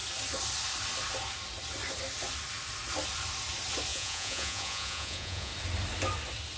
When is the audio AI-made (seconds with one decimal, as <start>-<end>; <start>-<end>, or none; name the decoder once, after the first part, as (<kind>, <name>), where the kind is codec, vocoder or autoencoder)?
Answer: 3.9-5.5 (vocoder, Vocos)